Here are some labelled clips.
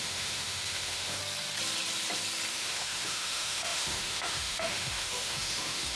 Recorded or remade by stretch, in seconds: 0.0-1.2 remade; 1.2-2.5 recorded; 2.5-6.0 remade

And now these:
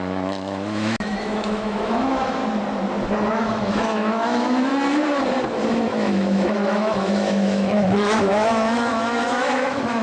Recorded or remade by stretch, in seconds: 0.0-2.4 remade; 2.4-3.3 recorded; 3.3-4.7 remade; 4.7-5.7 recorded; 5.7-10.0 remade

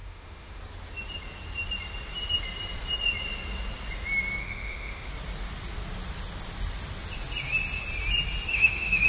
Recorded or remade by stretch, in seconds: 0.0-0.6 remade; 0.6-4.4 recorded; 4.4-5.1 remade; 5.1-8.5 recorded; 8.5-9.1 remade

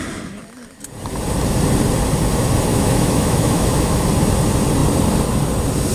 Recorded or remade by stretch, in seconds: 0.0-2.7 recorded; 2.7-4.0 remade; 4.0-5.9 recorded

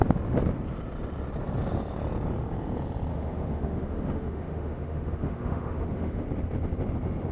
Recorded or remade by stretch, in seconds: 0.0-3.1 recorded; 3.1-6.2 remade; 6.2-7.3 recorded